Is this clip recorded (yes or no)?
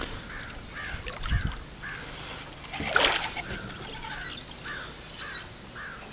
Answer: yes